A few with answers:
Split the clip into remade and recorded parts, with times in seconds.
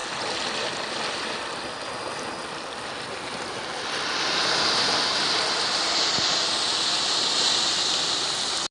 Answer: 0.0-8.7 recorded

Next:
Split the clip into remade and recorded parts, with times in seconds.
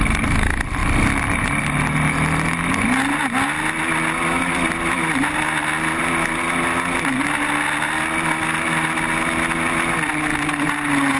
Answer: 0.0-11.2 recorded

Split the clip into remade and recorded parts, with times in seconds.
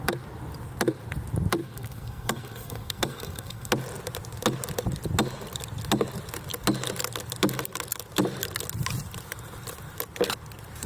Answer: 0.0-1.6 recorded; 1.6-3.7 remade; 3.7-10.9 recorded